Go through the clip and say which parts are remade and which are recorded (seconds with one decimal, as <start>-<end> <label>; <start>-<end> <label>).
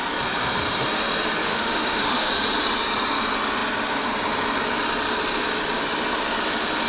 0.0-1.4 recorded; 1.4-2.3 remade; 2.3-6.9 recorded